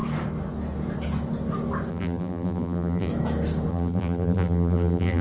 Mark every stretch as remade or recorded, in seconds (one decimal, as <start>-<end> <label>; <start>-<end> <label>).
0.0-1.9 recorded; 1.9-3.1 remade; 3.1-3.7 recorded; 3.7-5.2 remade